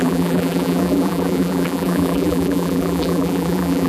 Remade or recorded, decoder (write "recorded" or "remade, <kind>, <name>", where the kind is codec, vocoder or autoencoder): remade, vocoder, BigVGAN v2